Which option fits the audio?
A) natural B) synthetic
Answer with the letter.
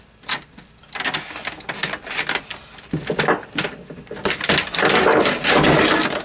A